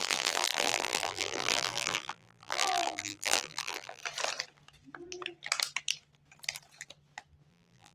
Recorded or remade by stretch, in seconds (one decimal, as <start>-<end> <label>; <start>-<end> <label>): 0.0-4.0 remade; 4.0-7.5 recorded; 7.5-7.9 remade